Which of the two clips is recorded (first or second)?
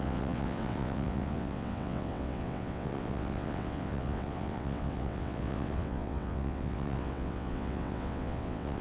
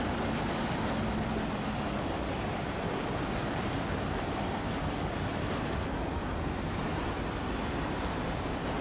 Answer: second